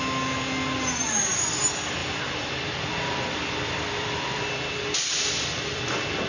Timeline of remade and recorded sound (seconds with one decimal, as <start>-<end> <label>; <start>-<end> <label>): 0.0-2.0 recorded; 2.0-5.8 remade; 5.8-6.3 recorded